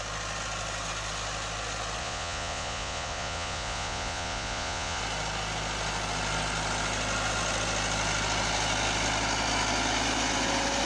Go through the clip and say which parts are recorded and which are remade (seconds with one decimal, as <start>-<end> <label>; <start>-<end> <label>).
0.0-2.0 recorded; 2.0-5.0 remade; 5.0-10.9 recorded